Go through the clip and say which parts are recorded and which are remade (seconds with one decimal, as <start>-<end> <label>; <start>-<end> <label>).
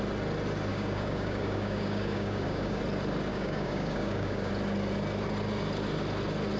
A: 0.0-0.7 recorded; 0.7-2.8 remade; 2.8-3.3 recorded; 3.3-4.5 remade; 4.5-6.6 recorded